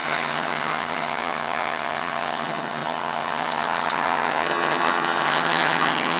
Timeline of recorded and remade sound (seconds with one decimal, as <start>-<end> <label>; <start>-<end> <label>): 0.0-6.2 remade